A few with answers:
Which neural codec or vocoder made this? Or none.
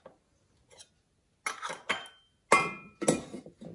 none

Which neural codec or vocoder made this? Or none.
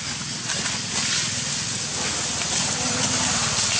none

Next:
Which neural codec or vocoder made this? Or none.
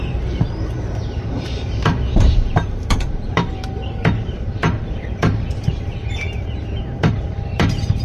vocoder, BigVGAN v2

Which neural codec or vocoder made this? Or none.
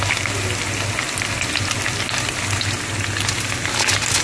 none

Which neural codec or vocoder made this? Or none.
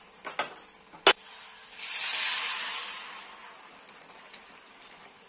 none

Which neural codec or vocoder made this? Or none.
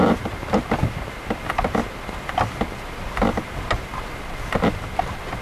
none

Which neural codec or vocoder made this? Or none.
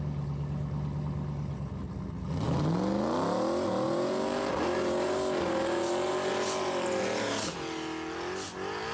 none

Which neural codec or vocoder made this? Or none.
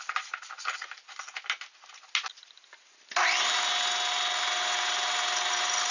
none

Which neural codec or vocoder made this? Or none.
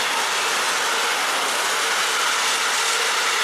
none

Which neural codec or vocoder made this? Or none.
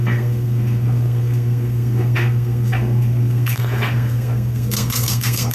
codec, SNAC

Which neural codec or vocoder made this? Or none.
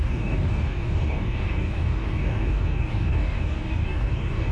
codec, DAC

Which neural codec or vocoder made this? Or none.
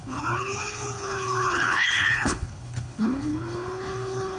codec, HILCodec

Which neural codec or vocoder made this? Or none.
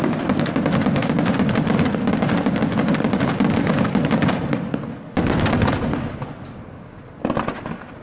none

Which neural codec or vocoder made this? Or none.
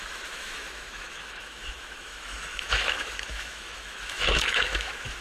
autoencoder, DAC-VAE